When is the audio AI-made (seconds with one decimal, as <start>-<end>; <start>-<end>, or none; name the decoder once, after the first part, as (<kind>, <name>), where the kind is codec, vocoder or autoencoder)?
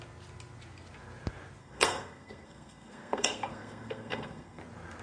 1.6-4.6 (codec, SNAC)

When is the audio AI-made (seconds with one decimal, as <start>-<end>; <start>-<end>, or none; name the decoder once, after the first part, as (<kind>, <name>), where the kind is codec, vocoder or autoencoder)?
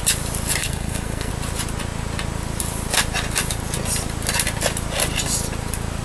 0.6-1.3 (codec, SNAC)